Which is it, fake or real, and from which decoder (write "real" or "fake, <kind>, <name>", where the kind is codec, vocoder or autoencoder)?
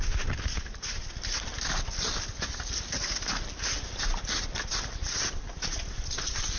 real